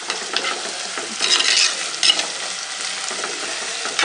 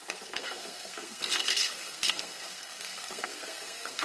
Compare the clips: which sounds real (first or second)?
first